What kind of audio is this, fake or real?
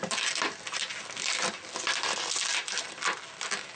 real